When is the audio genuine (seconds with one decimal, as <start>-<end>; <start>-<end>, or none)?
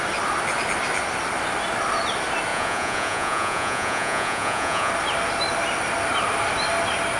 0.0-2.5; 4.9-7.2